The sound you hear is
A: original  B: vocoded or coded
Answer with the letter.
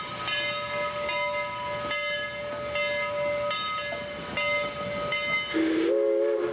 A